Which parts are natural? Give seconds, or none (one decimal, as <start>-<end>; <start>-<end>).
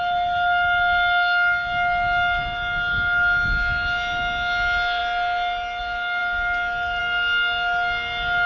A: 0.0-8.5